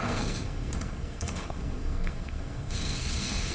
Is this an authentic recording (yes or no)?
no